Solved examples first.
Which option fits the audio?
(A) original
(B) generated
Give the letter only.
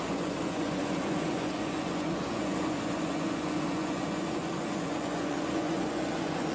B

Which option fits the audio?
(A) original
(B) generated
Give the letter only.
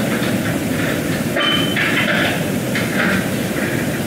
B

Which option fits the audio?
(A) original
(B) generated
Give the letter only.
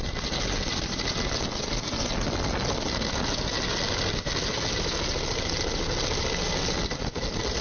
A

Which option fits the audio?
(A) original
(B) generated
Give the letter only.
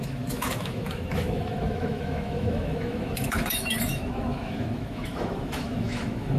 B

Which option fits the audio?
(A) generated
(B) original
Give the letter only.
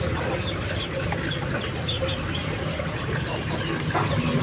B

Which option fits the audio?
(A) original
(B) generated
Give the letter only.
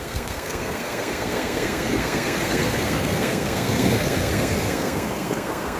B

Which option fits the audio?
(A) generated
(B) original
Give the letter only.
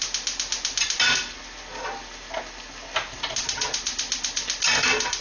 B